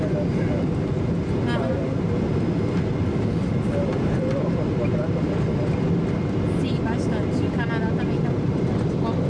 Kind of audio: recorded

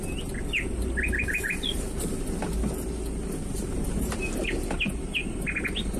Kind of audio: recorded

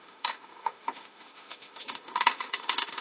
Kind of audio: remade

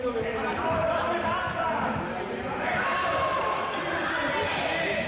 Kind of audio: recorded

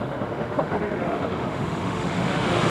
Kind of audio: remade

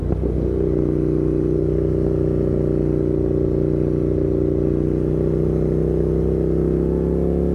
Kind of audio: recorded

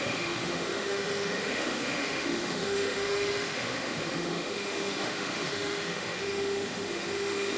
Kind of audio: remade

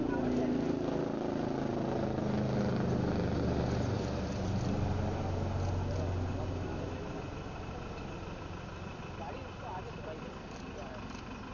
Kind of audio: recorded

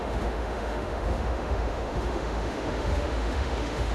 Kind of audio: remade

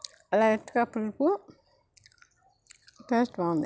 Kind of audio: recorded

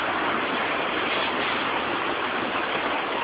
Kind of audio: recorded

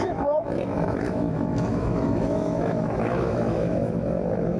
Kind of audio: remade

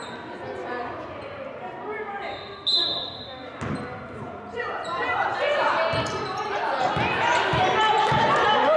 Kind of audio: recorded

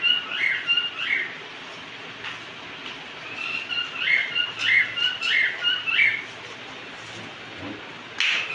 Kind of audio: recorded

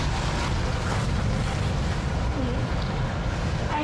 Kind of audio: recorded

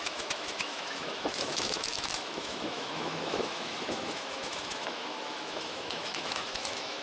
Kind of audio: remade